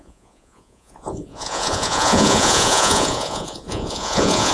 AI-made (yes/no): yes